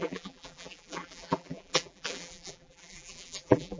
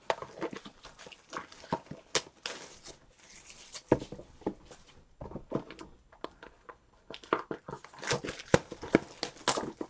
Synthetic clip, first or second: first